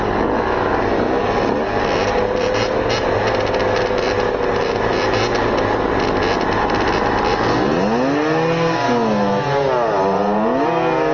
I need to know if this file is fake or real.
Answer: real